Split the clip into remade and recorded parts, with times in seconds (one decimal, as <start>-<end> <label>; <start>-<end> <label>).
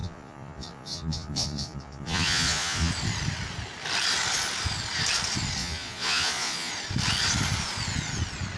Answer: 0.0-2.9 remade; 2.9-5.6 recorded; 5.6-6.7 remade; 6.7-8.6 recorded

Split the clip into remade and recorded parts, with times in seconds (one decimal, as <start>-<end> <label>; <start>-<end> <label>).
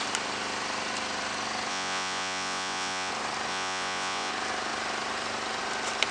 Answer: 0.0-1.7 recorded; 1.7-3.1 remade; 3.1-3.5 recorded; 3.5-4.3 remade; 4.3-6.1 recorded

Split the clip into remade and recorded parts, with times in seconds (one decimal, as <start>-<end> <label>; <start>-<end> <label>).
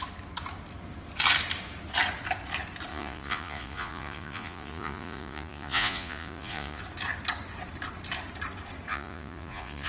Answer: 0.0-2.9 recorded; 2.9-6.8 remade; 6.8-8.9 recorded; 8.9-9.9 remade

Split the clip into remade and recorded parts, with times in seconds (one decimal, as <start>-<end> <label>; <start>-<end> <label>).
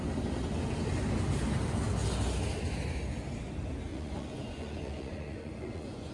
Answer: 0.0-3.9 recorded; 3.9-6.1 remade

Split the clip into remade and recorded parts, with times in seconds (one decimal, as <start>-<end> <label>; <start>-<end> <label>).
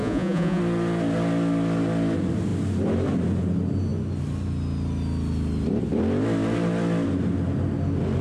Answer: 0.0-0.6 remade; 0.6-8.2 recorded